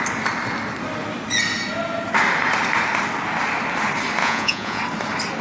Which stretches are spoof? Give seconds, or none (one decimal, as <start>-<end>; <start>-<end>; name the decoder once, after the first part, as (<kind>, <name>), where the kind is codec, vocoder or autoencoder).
4.2-4.8 (vocoder, Vocos)